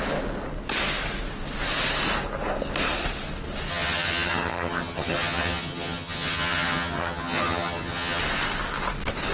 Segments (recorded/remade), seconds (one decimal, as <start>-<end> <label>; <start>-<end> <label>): 0.0-3.7 recorded; 3.7-8.2 remade; 8.2-9.3 recorded